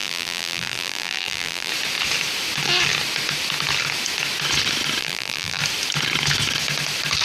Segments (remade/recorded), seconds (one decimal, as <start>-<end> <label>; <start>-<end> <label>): 0.0-1.7 remade; 1.7-5.0 recorded; 5.0-5.6 remade; 5.6-7.2 recorded